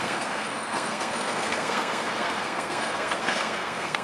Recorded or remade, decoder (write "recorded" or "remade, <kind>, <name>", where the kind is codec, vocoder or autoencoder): remade, codec, SNAC